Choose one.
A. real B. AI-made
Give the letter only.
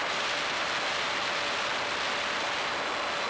A